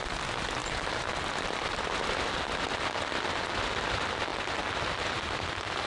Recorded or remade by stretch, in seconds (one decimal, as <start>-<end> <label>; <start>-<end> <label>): 0.0-5.9 recorded